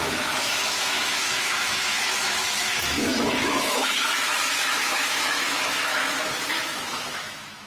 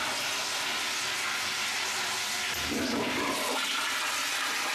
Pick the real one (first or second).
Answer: second